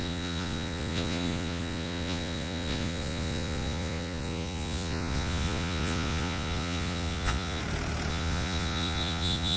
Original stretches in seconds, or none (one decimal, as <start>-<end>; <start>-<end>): 7.6-8.1

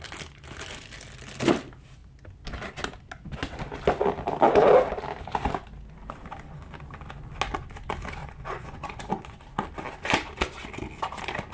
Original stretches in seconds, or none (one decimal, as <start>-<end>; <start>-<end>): 0.0-8.2; 9.4-11.5

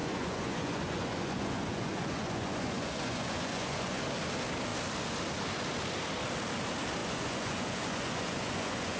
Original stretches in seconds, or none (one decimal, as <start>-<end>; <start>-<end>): 4.0-7.0

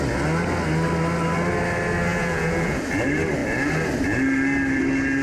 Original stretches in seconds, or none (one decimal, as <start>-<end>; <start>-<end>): 0.0-2.1; 2.8-5.2

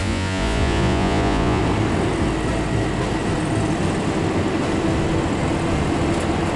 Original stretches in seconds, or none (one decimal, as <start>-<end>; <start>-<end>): 1.6-6.6